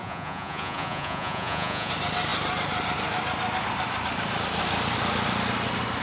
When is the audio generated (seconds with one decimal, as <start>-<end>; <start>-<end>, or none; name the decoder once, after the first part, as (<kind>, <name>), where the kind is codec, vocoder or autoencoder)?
0.0-1.9 (vocoder, Vocos)